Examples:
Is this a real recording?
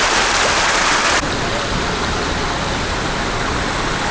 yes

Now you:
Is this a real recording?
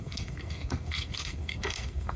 no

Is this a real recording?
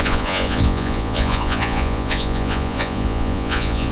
no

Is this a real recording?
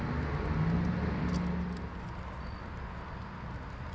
yes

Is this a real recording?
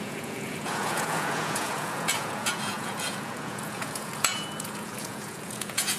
no